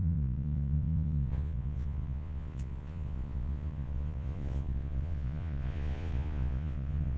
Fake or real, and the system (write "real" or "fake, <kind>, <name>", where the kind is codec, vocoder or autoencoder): fake, vocoder, Vocos